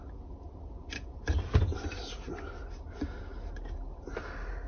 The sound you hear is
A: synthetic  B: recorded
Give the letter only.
B